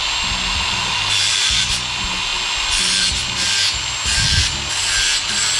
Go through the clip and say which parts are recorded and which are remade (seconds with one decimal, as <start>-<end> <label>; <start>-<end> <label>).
0.0-5.6 recorded